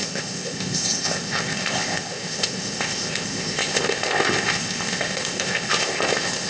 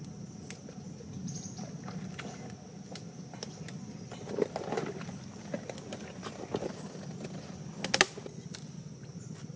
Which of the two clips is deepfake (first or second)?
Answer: first